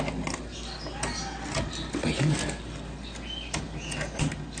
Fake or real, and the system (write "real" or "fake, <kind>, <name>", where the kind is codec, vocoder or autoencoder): real